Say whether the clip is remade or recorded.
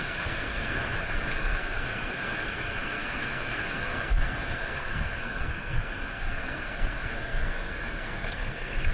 remade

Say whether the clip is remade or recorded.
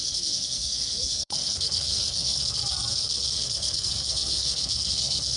remade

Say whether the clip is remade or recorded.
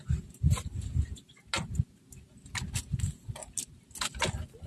recorded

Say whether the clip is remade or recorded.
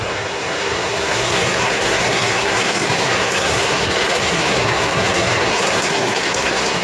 remade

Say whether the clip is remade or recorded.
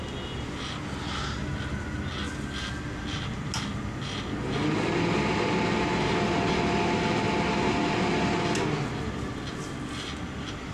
recorded